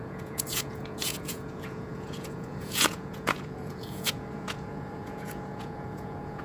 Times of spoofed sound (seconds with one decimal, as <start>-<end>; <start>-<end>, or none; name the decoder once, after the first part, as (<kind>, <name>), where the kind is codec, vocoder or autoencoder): 0.0-6.4 (vocoder, Vocos)